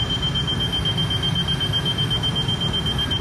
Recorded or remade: recorded